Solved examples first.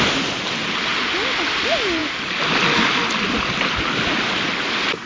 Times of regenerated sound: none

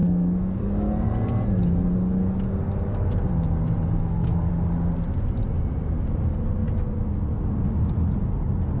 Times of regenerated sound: 0.0-0.6 (codec, SNAC); 4.0-4.5

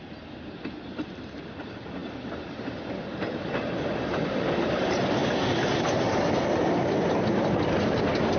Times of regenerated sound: none

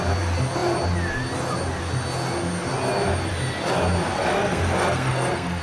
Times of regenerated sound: 4.1-5.6 (codec, SNAC)

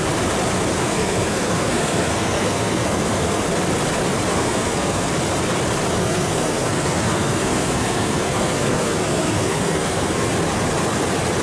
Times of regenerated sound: 0.8-3.4 (codec, SNAC); 4.3-5.1; 6.0-10.3

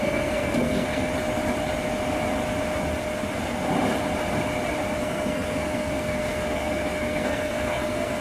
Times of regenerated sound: 0.0-1.1 (codec, SNAC); 5.0-8.2

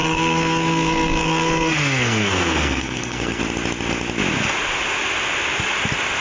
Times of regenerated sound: 0.0-3.4 (codec, SNAC)

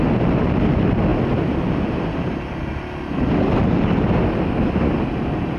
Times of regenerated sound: none